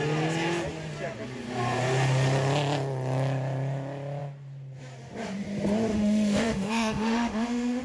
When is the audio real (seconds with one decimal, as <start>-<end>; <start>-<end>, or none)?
0.0-5.9